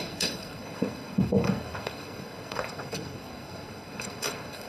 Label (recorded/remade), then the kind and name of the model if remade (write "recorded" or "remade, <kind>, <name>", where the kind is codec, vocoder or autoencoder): remade, codec, SNAC